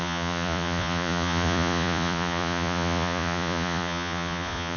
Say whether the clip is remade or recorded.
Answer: remade